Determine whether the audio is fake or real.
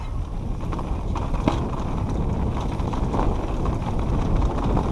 real